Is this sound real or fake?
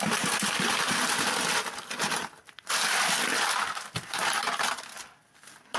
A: real